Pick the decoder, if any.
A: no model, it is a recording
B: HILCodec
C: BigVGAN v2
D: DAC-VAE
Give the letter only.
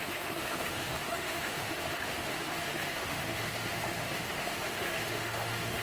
D